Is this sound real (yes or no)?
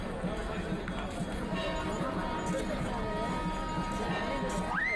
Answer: yes